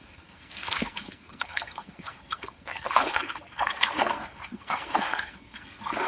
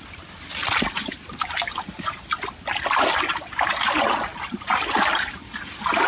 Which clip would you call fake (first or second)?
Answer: first